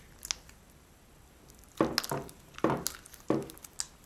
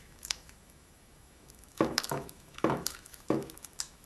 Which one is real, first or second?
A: first